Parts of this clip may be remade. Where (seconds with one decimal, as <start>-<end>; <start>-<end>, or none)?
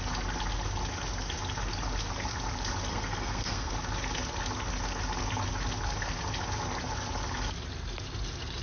2.9-3.7